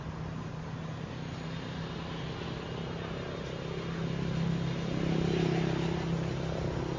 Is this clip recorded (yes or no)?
yes